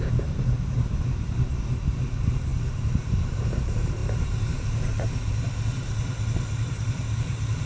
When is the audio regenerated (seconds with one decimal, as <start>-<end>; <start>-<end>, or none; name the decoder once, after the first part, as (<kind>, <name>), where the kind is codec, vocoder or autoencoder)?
0.0-4.0 (vocoder, BigVGAN v2); 6.7-7.7